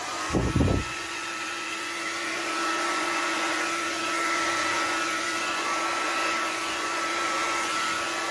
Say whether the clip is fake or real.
fake